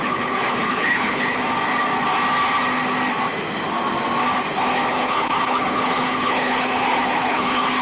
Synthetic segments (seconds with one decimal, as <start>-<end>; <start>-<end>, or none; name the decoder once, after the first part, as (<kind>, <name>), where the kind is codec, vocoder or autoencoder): 0.0-1.4 (codec, HILCodec); 4.9-7.8